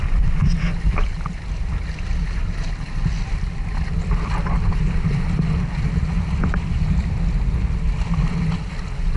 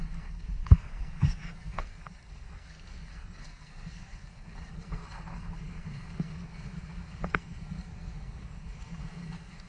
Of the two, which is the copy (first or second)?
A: second